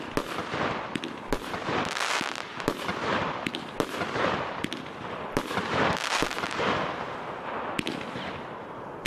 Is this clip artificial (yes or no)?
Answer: no